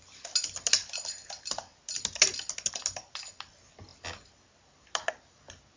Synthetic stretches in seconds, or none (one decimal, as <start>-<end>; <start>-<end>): none